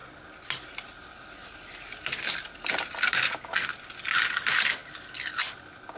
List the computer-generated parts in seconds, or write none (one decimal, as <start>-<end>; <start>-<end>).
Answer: 0.0-2.8; 4.8-6.0